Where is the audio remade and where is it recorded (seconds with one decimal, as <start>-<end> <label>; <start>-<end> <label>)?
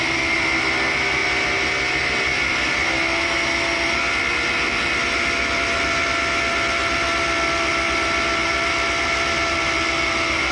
0.0-10.5 recorded